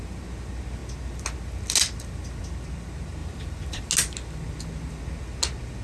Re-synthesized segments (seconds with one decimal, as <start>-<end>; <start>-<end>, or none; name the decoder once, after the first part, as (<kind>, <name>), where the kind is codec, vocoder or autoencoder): 3.2-3.8 (vocoder, BigVGAN v2)